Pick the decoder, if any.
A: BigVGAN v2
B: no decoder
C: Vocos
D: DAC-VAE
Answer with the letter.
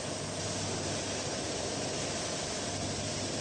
B